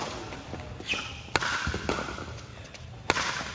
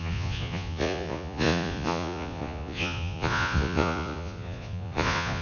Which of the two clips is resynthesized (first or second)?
second